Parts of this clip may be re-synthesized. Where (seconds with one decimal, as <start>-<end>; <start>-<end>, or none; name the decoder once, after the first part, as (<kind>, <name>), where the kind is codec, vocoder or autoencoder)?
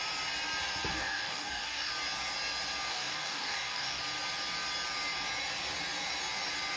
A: 0.9-1.9 (codec, DAC); 2.9-4.0